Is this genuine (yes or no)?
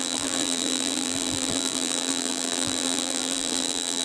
no